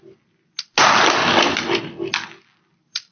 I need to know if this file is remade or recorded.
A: recorded